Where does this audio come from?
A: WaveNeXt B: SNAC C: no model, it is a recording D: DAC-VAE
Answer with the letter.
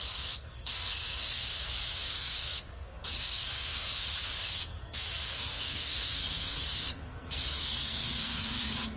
B